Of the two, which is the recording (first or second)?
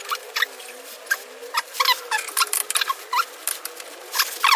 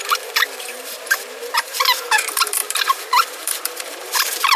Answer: first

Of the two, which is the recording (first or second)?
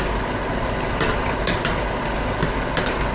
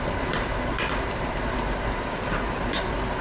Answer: first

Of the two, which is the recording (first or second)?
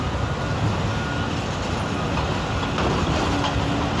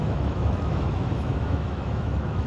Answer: first